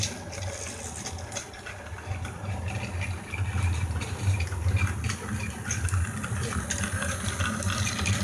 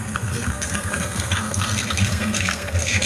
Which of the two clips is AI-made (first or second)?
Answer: second